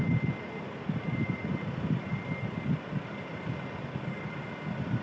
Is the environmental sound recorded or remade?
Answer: recorded